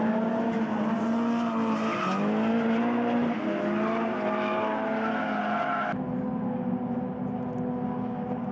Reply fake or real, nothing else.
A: real